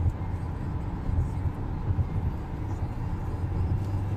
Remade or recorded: recorded